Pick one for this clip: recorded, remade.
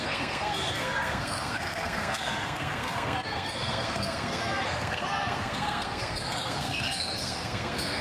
remade